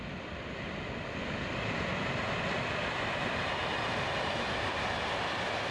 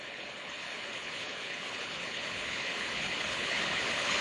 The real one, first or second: first